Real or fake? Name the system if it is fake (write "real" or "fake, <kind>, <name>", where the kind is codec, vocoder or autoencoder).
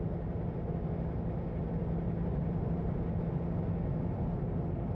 real